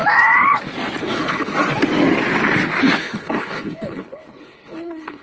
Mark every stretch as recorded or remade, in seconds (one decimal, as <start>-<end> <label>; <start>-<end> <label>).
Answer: 0.0-1.0 recorded; 1.0-1.5 remade; 1.5-3.0 recorded; 3.0-5.2 remade